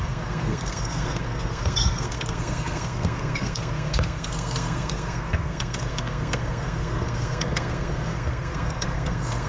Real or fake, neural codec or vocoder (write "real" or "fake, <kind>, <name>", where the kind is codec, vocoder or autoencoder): fake, codec, SNAC